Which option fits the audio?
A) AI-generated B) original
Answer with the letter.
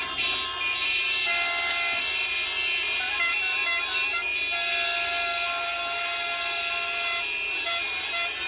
B